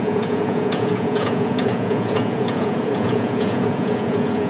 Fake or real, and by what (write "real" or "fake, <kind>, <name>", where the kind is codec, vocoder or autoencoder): fake, vocoder, Vocos